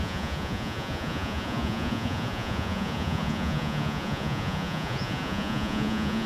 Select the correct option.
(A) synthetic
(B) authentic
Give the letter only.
A